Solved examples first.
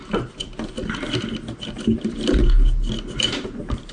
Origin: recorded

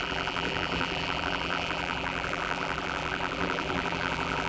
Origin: remade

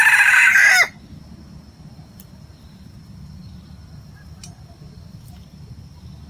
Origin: recorded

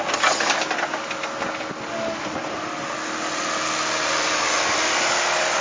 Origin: recorded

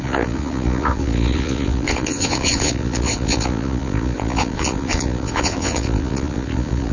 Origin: remade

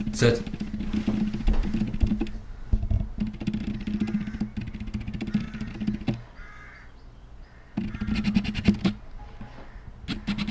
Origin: recorded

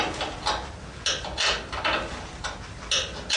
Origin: recorded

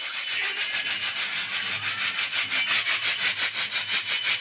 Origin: recorded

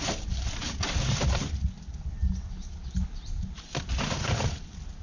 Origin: recorded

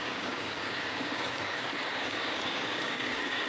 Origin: remade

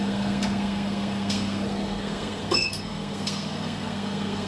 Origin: remade